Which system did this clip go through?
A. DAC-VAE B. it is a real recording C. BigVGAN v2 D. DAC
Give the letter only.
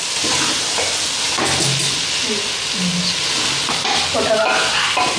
B